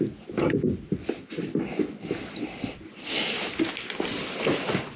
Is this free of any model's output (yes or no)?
yes